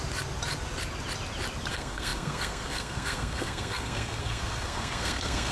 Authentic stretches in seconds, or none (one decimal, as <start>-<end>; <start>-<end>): 0.0-1.7